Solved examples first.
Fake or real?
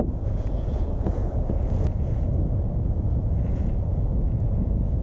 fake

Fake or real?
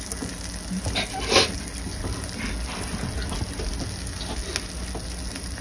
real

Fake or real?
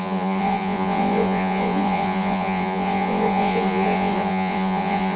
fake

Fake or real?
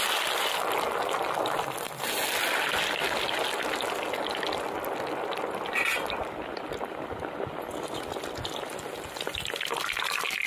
real